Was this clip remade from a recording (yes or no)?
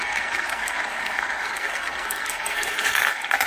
yes